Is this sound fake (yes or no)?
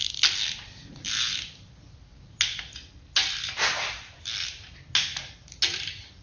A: no